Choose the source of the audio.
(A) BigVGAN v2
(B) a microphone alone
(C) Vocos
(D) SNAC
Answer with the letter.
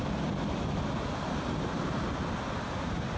B